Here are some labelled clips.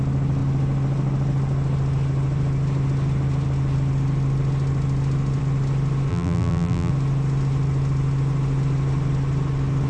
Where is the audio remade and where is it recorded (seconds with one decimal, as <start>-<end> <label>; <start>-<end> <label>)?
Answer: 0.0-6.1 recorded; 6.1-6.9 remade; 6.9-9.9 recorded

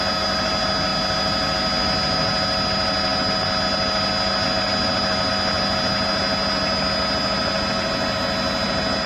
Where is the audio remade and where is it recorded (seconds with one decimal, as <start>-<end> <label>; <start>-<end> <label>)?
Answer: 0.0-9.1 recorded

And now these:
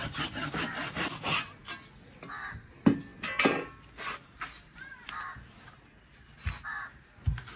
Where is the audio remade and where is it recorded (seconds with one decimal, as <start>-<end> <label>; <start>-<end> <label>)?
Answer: 0.0-0.5 remade; 0.5-7.6 recorded

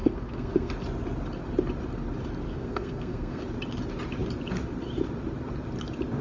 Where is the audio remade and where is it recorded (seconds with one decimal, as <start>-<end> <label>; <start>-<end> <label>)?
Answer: 0.0-0.7 remade; 0.7-2.5 recorded; 2.5-3.4 remade; 3.4-6.2 recorded